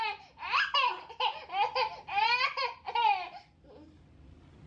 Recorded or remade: recorded